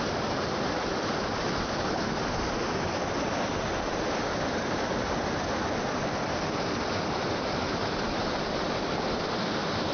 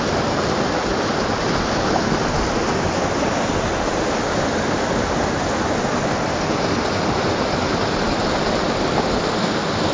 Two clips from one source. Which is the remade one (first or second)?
first